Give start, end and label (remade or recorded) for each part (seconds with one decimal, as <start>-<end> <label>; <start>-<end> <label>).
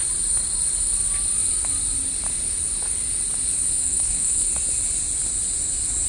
0.0-3.8 recorded; 3.8-4.5 remade; 4.5-6.1 recorded